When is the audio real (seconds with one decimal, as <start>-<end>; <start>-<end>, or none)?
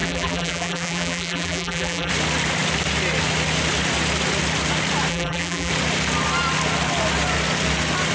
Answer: 2.1-5.1; 5.7-8.1